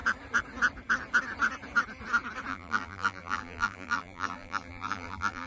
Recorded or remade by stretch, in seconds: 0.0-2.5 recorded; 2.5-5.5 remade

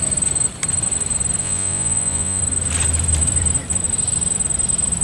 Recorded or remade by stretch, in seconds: 0.0-1.4 recorded; 1.4-2.4 remade; 2.4-5.0 recorded

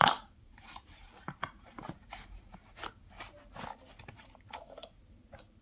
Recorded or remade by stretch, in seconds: 0.0-2.6 remade; 2.6-4.0 recorded; 4.0-5.6 remade

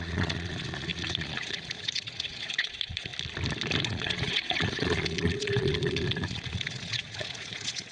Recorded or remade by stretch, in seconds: 0.0-3.1 remade; 3.1-3.8 recorded; 3.8-7.9 remade

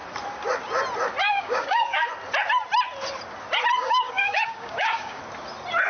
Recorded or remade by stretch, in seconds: 0.0-1.2 recorded; 1.2-2.1 remade; 2.1-3.8 recorded; 3.8-5.2 remade; 5.2-5.9 recorded

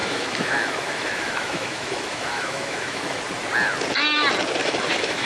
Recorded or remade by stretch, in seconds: 0.0-3.2 remade; 3.2-4.6 recorded; 4.6-5.3 remade

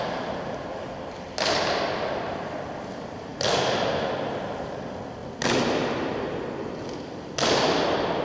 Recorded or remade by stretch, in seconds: 0.0-8.2 recorded

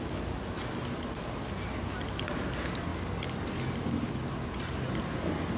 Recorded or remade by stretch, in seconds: 0.0-5.6 recorded